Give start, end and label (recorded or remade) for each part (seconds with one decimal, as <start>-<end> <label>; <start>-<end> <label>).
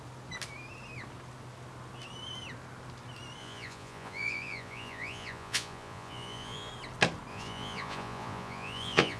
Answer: 0.0-3.4 recorded; 3.4-6.7 remade; 6.7-7.3 recorded; 7.3-9.2 remade